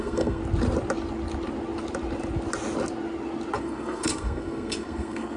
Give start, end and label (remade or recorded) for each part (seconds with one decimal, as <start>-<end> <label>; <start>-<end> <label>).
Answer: 0.0-0.4 remade; 0.4-3.6 recorded; 3.6-5.4 remade